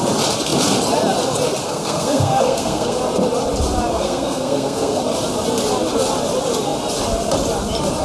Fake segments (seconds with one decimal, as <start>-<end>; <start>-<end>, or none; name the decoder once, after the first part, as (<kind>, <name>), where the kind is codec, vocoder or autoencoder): 1.6-3.0 (codec, SNAC); 3.9-5.0